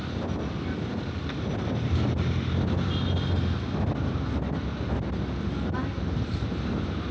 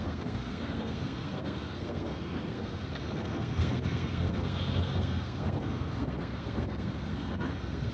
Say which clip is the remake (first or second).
second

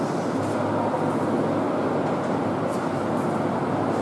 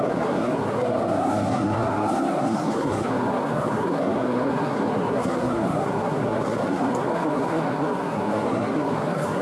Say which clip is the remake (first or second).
second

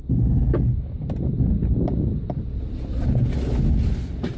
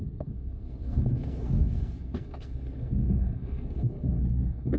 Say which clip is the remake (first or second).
second